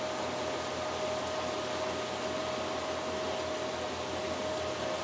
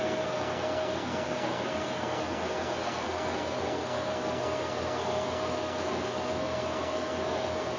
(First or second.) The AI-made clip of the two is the second